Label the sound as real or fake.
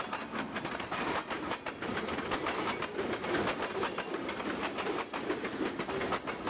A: real